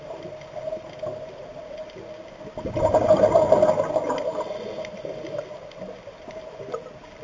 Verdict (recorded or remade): recorded